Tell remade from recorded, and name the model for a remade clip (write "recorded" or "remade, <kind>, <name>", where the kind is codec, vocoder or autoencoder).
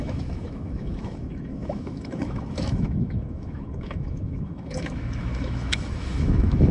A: remade, autoencoder, DAC-VAE